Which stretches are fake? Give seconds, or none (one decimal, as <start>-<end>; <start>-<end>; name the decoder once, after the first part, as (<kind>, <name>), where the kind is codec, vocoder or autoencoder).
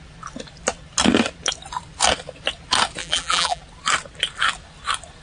3.0-3.6 (vocoder, BigVGAN v2)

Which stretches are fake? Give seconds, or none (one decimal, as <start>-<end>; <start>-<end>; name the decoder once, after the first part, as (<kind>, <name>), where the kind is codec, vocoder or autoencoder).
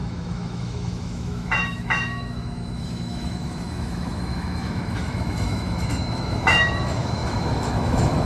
0.0-8.3 (autoencoder, DAC-VAE)